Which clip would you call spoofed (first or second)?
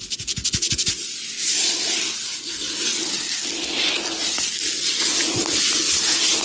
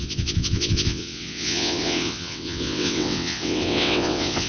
second